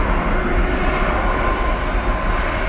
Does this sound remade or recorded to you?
recorded